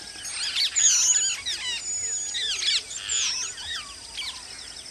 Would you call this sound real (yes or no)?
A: yes